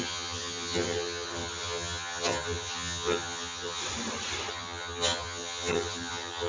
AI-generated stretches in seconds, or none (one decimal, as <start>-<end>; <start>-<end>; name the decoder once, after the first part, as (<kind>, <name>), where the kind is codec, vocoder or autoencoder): 0.0-3.8 (vocoder, HiFi-GAN); 4.5-6.5